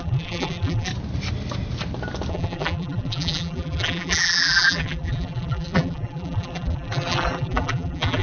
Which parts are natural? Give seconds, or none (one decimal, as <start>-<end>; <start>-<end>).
0.9-2.3